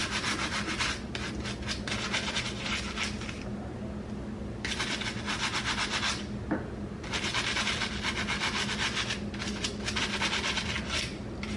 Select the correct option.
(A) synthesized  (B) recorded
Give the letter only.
B